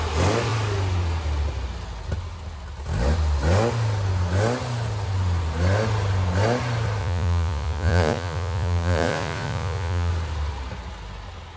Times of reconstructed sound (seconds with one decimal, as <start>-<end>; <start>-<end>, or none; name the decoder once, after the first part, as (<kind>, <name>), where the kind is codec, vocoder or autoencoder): 7.0-10.1 (vocoder, Vocos)